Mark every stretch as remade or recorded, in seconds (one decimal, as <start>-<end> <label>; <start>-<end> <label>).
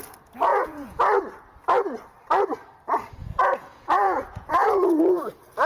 0.0-0.5 recorded; 0.5-1.0 remade; 1.0-3.2 recorded; 3.2-5.0 remade; 5.0-5.7 recorded